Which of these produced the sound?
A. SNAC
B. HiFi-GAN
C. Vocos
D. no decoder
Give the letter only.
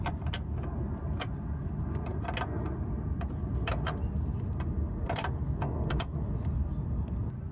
D